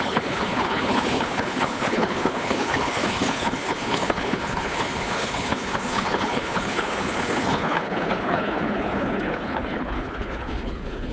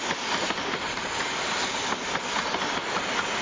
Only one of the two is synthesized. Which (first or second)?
first